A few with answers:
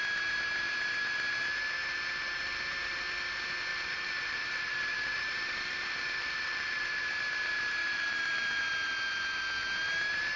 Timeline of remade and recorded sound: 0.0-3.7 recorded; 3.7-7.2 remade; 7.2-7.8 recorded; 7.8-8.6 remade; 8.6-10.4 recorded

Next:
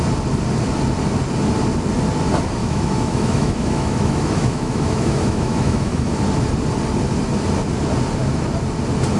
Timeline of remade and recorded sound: 0.0-2.6 recorded; 2.6-6.2 remade; 6.2-9.2 recorded

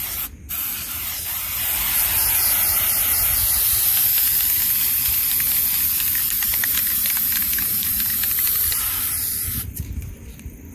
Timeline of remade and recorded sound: 0.0-7.4 recorded; 7.4-9.1 remade; 9.1-9.6 recorded; 9.6-10.2 remade; 10.2-10.7 recorded